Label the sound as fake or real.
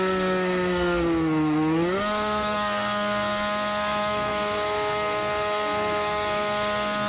fake